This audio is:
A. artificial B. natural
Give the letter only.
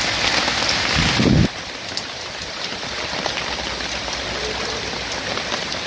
B